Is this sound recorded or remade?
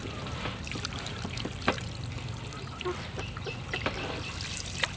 recorded